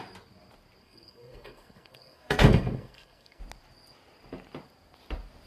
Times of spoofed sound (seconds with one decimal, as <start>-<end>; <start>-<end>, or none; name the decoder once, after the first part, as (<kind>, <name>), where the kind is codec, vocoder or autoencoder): 0.8-3.4 (codec, SNAC)